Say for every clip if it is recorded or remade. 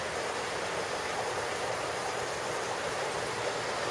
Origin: recorded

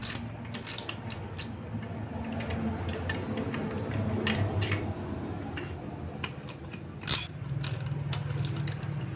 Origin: recorded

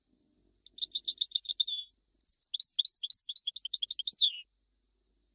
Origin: recorded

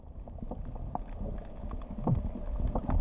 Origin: recorded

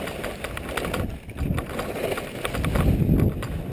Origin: recorded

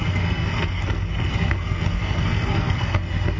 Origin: remade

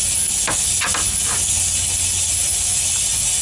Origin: recorded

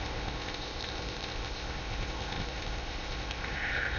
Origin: remade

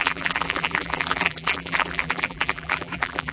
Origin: remade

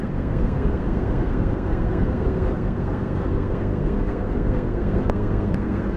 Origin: remade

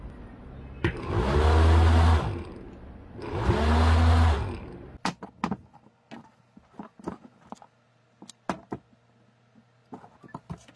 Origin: recorded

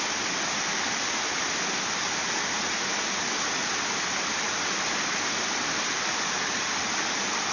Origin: recorded